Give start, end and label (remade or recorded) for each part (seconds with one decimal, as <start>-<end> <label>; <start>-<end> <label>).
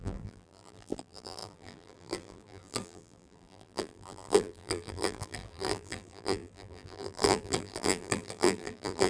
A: 0.0-9.1 remade